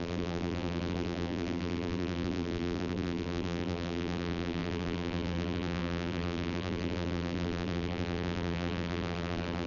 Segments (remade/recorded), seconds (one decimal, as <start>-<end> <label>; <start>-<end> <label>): 0.0-9.7 remade